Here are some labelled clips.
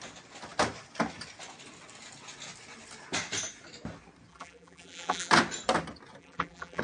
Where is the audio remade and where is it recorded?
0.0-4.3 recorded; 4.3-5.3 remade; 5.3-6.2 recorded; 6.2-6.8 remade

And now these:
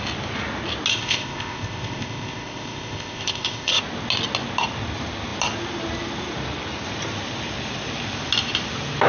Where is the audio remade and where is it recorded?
0.0-0.9 recorded; 0.9-3.8 remade; 3.8-9.1 recorded

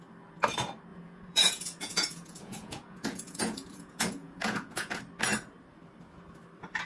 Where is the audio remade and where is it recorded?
0.0-0.9 recorded; 0.9-5.0 remade; 5.0-6.9 recorded

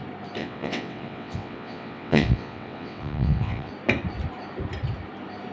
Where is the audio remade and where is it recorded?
0.0-0.4 recorded; 0.4-3.7 remade; 3.7-5.5 recorded